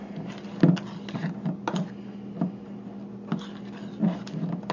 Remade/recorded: recorded